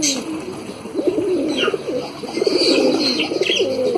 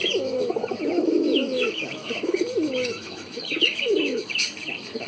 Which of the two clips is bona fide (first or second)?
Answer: first